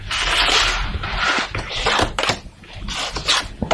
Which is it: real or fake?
fake